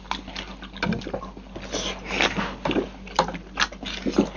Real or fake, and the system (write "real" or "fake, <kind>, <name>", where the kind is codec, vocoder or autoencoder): real